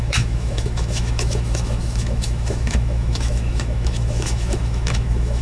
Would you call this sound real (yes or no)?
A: no